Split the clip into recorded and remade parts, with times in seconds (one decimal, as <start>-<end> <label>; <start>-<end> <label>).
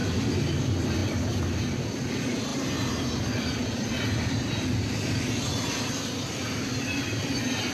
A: 0.0-7.7 recorded